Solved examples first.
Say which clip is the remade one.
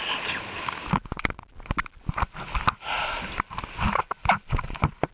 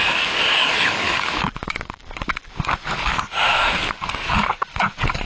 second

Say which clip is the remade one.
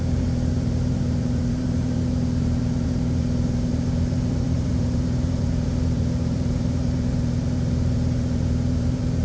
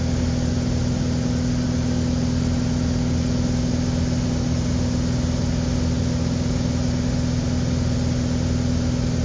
first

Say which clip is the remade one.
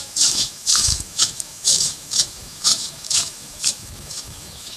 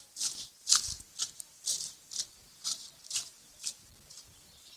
first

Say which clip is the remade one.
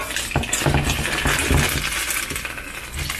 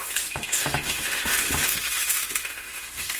second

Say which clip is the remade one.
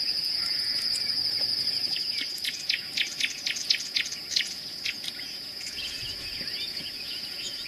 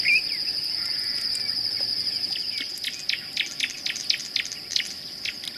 first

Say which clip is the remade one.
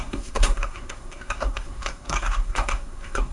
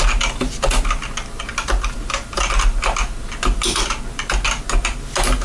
first